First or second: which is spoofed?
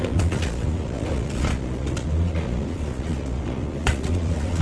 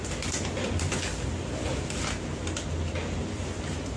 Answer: first